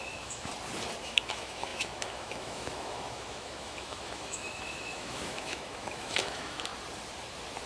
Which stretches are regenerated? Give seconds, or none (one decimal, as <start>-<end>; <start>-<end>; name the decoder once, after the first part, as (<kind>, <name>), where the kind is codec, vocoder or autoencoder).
0.0-0.5 (autoencoder, DAC-VAE); 1.0-6.7